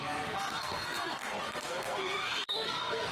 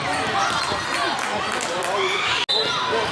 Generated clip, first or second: first